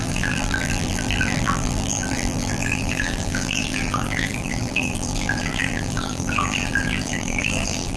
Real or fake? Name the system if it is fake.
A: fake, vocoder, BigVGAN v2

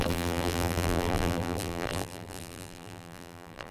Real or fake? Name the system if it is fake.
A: fake, vocoder, BigVGAN v2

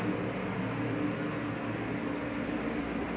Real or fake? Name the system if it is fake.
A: real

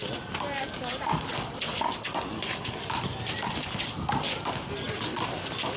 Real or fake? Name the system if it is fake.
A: real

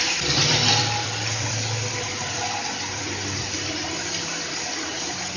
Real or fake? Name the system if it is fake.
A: fake, vocoder, BigVGAN v2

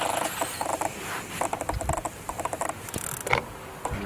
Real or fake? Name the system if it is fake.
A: real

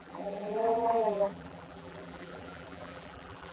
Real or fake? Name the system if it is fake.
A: fake, vocoder, BigVGAN v2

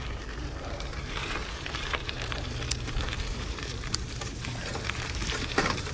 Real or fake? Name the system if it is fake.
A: fake, vocoder, BigVGAN v2